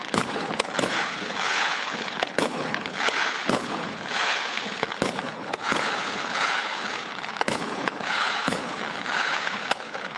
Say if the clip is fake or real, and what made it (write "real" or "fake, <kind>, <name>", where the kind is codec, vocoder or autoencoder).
fake, codec, HILCodec